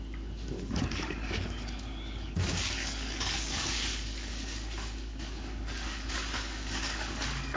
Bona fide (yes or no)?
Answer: no